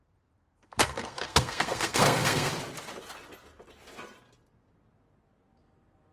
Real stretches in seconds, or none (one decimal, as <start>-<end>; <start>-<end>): 0.0-0.4; 2.5-6.1